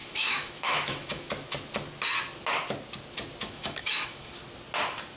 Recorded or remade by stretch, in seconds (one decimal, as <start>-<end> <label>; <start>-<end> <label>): 0.0-1.3 remade; 1.3-3.4 recorded; 3.4-4.3 remade; 4.3-5.2 recorded

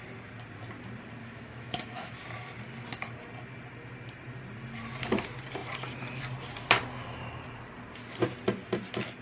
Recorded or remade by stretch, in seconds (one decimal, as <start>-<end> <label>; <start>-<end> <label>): 0.0-1.2 recorded; 1.2-2.1 remade; 2.1-9.2 recorded